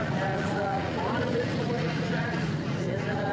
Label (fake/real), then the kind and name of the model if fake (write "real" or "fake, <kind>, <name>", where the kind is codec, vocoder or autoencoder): fake, vocoder, Vocos